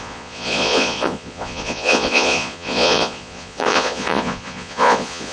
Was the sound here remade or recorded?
remade